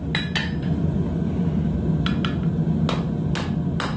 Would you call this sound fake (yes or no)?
no